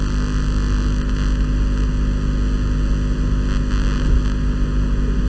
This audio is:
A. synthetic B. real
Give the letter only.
B